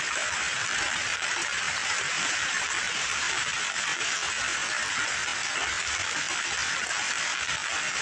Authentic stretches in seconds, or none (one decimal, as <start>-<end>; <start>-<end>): 0.0-0.6; 3.4-8.0